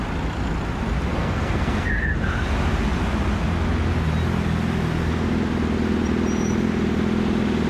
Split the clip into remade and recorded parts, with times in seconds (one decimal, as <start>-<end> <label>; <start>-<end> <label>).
0.0-1.1 recorded; 1.1-1.9 remade; 1.9-7.7 recorded